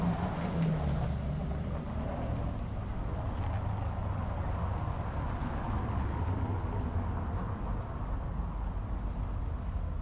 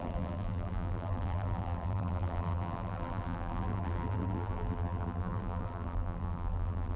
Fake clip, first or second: second